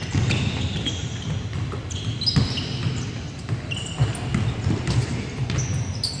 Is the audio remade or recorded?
recorded